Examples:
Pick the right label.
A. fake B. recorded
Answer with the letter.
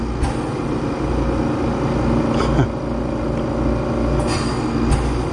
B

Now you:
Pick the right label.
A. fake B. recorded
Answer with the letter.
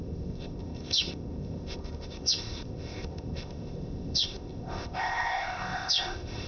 A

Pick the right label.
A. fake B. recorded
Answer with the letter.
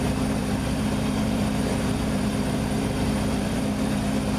A